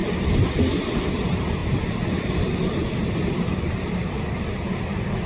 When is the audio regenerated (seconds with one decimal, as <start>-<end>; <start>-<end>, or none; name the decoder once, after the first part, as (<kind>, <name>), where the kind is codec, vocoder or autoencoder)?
0.8-5.3 (vocoder, BigVGAN v2)